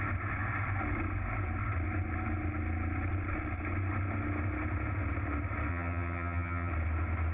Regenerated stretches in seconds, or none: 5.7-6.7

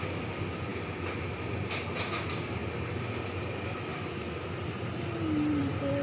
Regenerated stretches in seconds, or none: none